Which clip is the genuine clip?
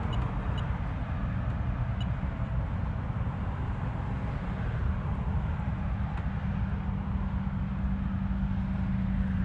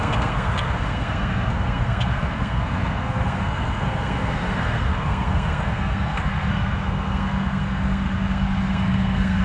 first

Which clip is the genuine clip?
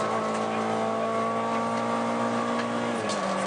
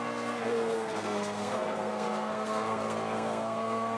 first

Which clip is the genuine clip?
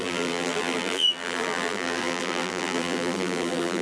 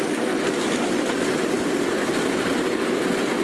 second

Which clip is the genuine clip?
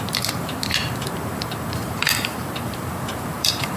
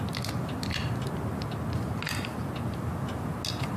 second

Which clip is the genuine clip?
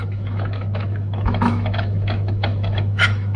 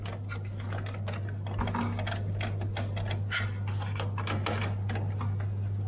second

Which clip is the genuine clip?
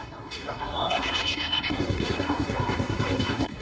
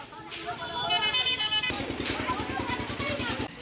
second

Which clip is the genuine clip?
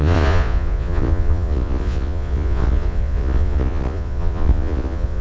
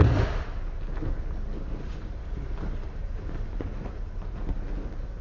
second